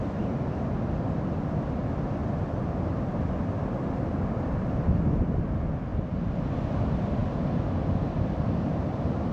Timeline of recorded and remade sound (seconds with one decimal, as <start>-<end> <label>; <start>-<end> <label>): 0.0-9.3 recorded